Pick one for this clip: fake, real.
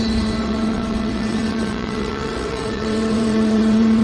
fake